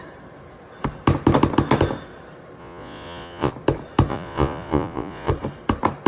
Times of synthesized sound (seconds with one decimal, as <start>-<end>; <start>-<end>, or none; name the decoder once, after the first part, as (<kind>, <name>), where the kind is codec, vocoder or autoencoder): 2.6-3.5 (vocoder, Vocos); 4.1-5.3